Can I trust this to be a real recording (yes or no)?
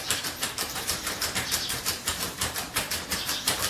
no